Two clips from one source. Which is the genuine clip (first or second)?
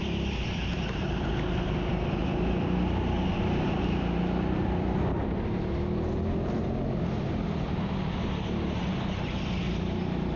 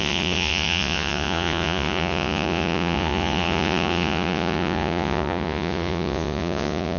first